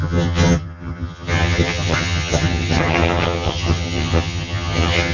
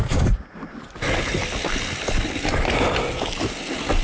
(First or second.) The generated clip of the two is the first